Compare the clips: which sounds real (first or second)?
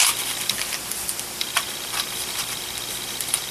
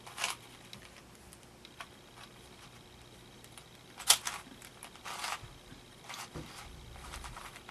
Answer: second